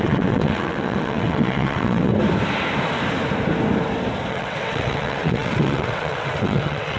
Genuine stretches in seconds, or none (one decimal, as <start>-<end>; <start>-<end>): 2.1-4.3